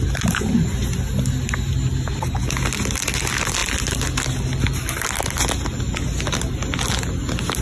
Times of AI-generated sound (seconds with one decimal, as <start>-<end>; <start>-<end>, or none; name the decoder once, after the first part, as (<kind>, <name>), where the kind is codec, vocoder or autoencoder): none